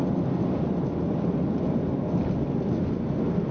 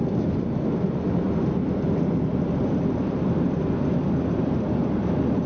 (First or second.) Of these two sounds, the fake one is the second